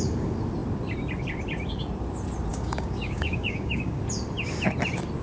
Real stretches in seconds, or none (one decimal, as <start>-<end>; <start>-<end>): 0.0-2.5; 4.0-5.2